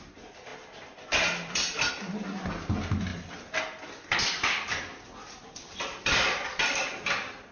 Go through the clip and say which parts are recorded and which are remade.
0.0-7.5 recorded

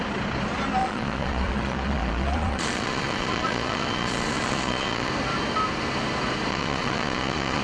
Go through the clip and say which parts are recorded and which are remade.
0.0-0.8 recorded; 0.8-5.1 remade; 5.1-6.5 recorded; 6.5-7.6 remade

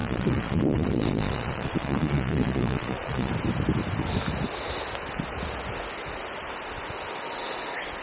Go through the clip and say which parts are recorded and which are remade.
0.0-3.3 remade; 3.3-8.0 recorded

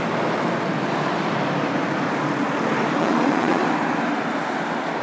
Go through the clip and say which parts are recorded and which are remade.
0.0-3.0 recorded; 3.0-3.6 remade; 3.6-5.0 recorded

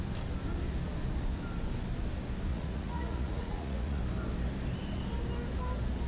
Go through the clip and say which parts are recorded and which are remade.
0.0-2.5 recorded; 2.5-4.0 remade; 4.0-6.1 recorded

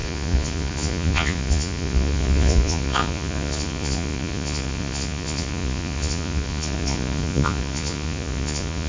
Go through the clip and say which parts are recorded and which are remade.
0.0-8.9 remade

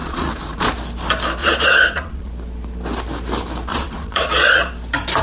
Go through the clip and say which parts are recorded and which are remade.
0.0-0.7 remade; 0.7-1.4 recorded; 1.4-2.3 remade; 2.3-3.7 recorded; 3.7-4.7 remade; 4.7-5.2 recorded